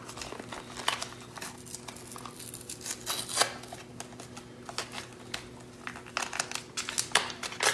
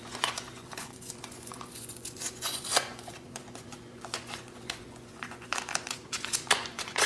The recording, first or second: first